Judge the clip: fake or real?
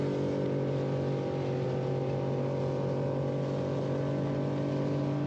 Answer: real